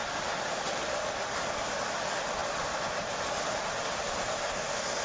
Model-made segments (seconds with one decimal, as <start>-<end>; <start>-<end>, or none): 0.0-1.1